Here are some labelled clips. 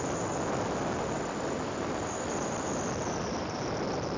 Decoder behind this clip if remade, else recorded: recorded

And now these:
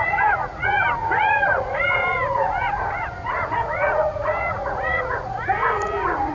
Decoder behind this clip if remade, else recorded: remade, vocoder, Vocos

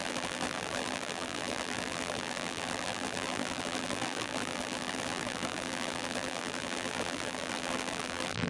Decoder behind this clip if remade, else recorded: remade, vocoder, BigVGAN v2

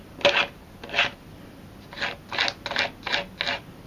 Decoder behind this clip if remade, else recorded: recorded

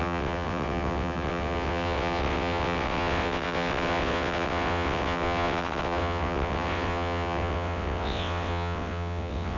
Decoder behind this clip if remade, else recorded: remade, vocoder, WaveNeXt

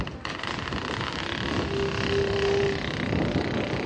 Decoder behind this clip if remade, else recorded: recorded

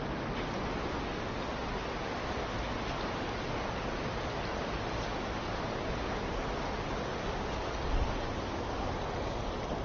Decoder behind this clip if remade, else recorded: recorded